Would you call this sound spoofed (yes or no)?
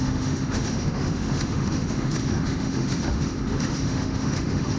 yes